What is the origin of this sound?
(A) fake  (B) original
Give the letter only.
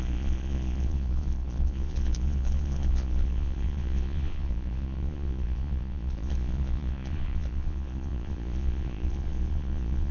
A